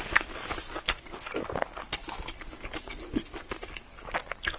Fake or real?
real